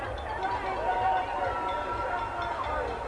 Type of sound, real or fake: real